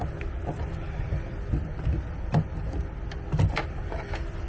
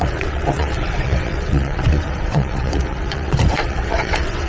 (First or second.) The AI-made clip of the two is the second